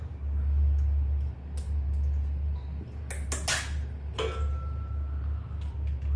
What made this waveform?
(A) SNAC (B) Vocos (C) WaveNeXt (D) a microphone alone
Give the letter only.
D